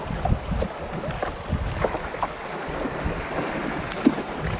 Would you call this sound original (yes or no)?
yes